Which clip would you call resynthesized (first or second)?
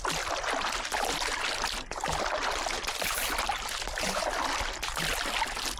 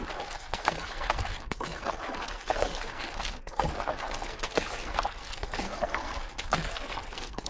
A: second